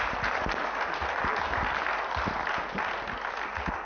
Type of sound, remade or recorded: recorded